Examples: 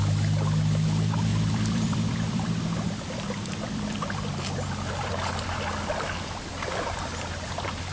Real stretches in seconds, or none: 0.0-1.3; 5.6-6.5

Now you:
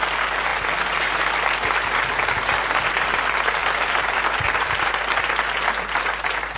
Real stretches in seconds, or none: 0.0-3.6; 4.9-6.6

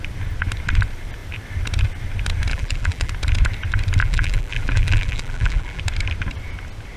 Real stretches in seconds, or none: 0.0-2.5; 3.1-4.0; 5.8-7.0

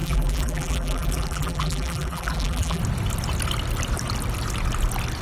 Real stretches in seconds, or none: 2.8-5.2

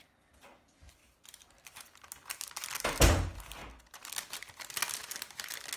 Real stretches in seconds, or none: 0.0-5.8